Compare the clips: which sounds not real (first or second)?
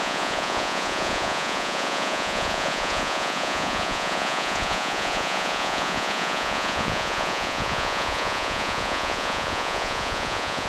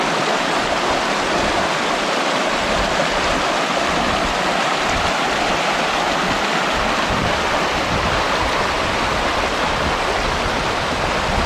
first